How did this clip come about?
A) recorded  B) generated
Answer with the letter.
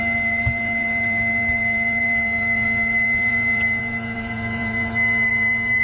B